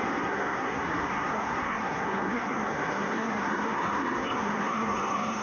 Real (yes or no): no